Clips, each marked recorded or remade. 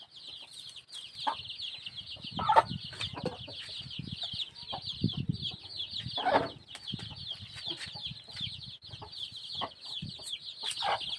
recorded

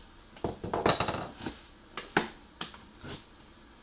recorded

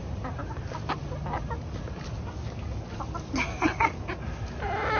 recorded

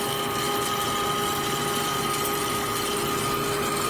recorded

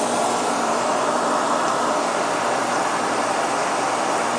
remade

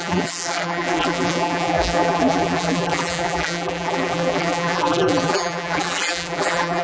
remade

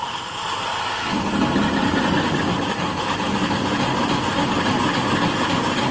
recorded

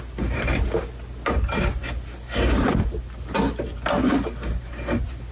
recorded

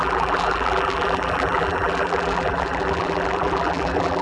remade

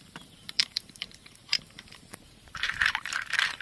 remade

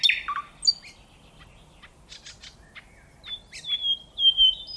recorded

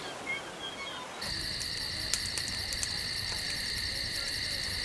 recorded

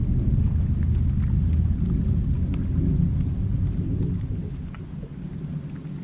recorded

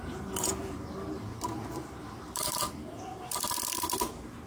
remade